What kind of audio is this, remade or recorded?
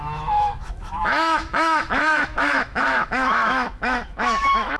remade